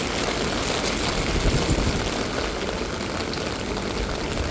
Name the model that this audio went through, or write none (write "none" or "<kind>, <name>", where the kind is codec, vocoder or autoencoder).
none